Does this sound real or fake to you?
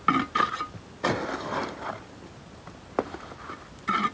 real